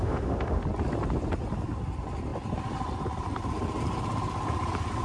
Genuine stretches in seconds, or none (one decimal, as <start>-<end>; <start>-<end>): 0.6-5.0